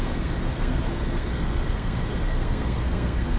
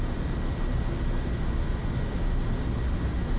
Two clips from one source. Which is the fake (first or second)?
first